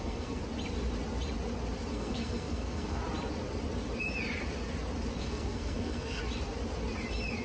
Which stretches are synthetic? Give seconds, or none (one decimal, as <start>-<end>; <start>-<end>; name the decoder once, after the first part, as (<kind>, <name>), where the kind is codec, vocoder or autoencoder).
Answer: 0.0-0.4 (codec, SNAC); 1.9-3.0; 5.2-6.2